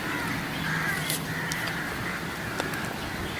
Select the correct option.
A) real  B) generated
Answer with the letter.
A